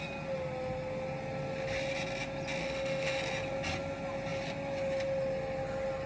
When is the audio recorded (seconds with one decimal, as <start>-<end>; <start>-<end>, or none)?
0.0-2.6; 3.2-6.1